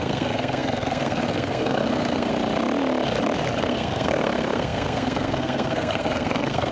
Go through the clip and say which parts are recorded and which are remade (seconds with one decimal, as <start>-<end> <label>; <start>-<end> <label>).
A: 0.0-2.3 remade; 2.3-3.6 recorded; 3.6-6.7 remade

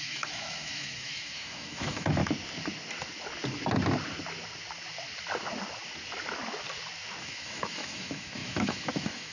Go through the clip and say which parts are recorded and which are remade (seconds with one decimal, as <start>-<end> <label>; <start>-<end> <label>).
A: 0.0-2.2 remade; 2.2-7.2 recorded; 7.2-9.3 remade

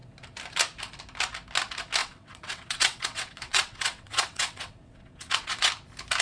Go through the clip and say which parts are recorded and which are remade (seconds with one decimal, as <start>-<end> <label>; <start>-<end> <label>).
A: 0.0-2.0 recorded; 2.0-5.7 remade; 5.7-6.2 recorded

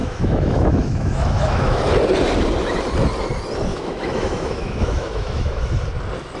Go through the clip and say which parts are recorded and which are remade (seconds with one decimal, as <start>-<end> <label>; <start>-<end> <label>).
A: 0.0-1.8 remade; 1.8-3.7 recorded; 3.7-5.7 remade; 5.7-6.4 recorded